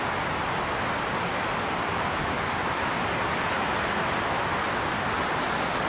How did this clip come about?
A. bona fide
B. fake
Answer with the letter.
A